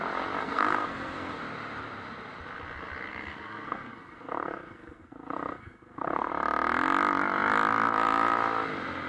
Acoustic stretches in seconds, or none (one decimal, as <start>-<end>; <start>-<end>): 0.0-0.4; 1.4-3.1; 6.3-9.1